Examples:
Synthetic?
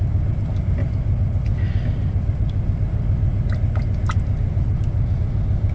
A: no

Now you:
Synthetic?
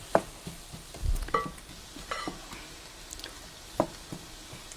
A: no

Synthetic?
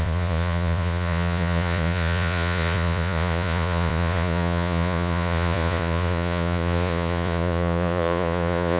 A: yes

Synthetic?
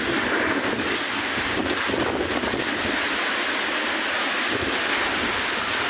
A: yes